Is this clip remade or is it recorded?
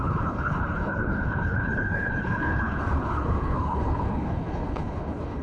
remade